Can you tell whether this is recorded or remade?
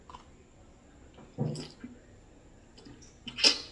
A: recorded